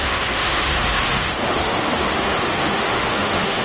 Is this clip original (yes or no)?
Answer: no